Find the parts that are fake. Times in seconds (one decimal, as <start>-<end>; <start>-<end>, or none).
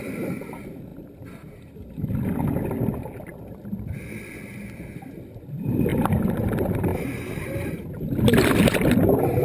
5.9-6.5; 6.9-8.2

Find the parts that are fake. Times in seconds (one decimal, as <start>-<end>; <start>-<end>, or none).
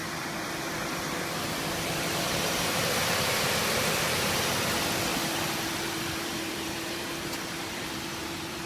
0.0-4.5; 5.1-8.7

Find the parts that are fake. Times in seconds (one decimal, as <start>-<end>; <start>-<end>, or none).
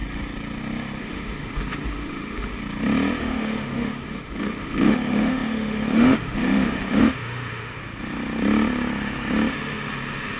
1.0-2.6; 3.2-7.8; 9.5-10.4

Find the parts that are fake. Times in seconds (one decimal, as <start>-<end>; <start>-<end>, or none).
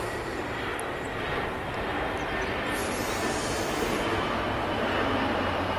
0.0-0.7; 4.2-5.8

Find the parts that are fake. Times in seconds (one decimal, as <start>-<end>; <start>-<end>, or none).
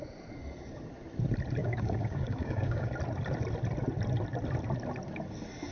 1.6-2.9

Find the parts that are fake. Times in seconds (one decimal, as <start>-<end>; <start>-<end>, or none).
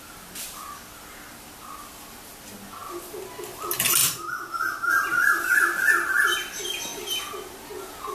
none